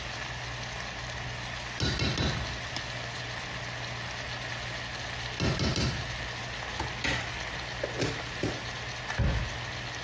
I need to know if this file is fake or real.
real